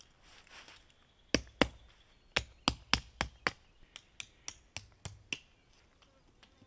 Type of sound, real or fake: real